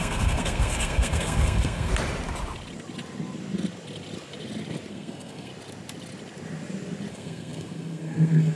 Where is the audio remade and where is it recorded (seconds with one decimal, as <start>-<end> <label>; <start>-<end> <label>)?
0.0-1.9 remade; 1.9-4.9 recorded; 4.9-5.5 remade; 5.5-7.1 recorded; 7.1-8.6 remade

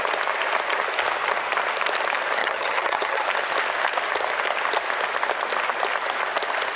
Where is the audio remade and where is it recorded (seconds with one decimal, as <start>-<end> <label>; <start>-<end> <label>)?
0.0-2.4 recorded; 2.4-3.2 remade; 3.2-6.8 recorded

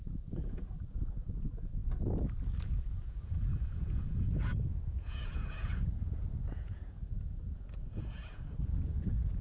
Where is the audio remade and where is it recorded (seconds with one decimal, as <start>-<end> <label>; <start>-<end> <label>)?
0.0-1.8 remade; 1.8-2.6 recorded; 2.6-9.4 remade

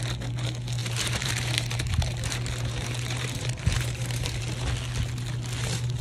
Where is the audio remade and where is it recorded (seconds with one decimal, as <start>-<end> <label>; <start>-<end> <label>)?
0.0-0.8 recorded; 0.8-4.4 remade; 4.4-6.0 recorded

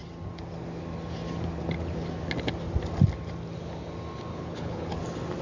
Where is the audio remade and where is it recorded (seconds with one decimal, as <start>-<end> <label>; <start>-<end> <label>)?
0.0-4.3 recorded; 4.3-5.0 remade; 5.0-5.4 recorded

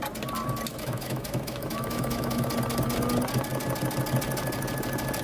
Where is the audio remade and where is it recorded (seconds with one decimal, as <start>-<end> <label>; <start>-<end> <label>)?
0.0-0.7 recorded; 0.7-2.5 remade; 2.5-5.2 recorded